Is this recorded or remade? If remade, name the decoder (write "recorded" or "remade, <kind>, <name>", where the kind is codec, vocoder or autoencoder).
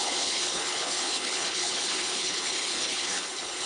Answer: remade, codec, HILCodec